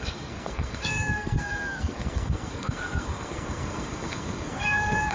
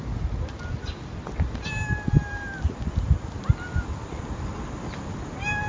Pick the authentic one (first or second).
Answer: second